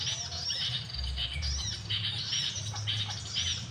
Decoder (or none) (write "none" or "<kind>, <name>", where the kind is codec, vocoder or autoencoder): none